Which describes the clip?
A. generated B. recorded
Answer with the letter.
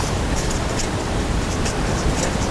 A